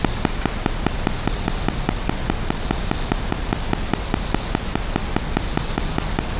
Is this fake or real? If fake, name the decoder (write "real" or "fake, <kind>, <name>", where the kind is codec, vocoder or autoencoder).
fake, vocoder, BigVGAN v2